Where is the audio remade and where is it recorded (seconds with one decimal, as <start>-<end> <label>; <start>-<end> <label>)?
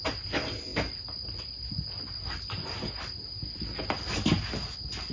0.0-5.1 recorded